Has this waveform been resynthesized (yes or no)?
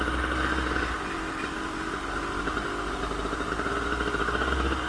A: no